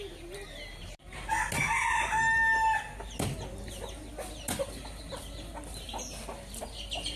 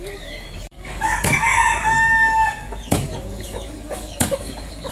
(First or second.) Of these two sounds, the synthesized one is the second